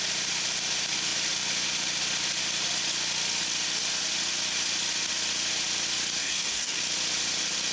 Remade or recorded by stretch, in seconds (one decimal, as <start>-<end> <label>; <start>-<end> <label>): 0.0-6.2 recorded; 6.2-6.8 remade; 6.8-7.7 recorded